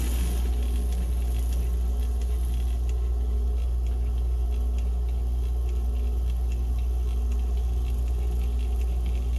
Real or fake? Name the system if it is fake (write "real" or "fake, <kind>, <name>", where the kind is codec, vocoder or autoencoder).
real